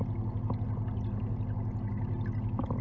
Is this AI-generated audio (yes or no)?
no